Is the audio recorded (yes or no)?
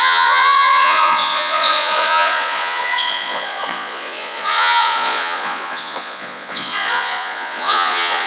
no